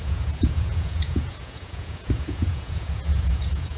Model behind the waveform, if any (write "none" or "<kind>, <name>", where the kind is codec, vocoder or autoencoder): vocoder, Vocos